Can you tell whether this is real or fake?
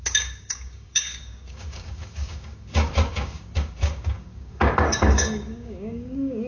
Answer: fake